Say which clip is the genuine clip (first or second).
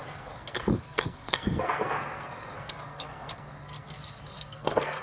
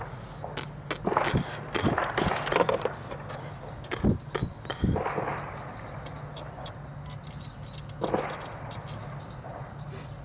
second